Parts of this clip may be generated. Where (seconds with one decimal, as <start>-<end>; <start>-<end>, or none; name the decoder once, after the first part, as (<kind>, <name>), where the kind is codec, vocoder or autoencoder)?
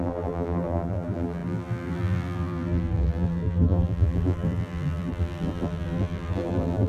0.0-6.9 (vocoder, BigVGAN v2)